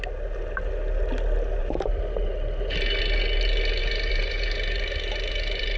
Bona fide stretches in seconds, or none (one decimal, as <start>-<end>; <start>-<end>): 0.0-1.6; 3.0-3.8